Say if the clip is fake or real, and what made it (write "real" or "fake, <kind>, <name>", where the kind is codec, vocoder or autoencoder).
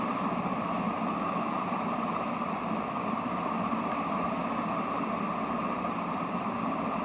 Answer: real